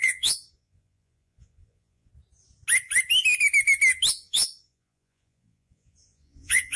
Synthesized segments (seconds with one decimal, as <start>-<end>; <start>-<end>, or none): 0.0-2.1; 4.1-6.8